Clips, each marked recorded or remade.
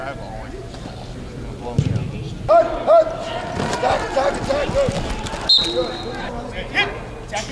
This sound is recorded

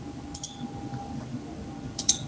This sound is remade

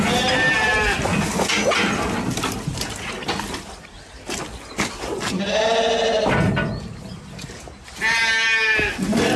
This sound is recorded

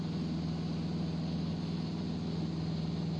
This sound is recorded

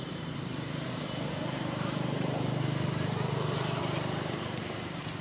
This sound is remade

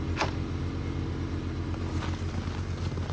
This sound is recorded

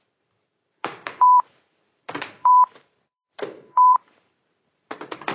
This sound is remade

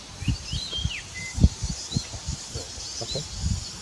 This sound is recorded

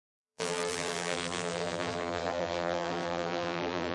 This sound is remade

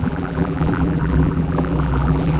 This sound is remade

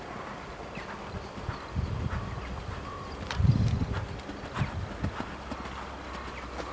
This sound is recorded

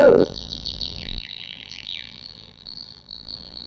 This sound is remade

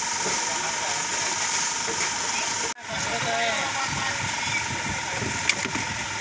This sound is recorded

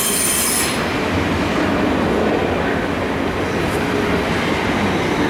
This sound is recorded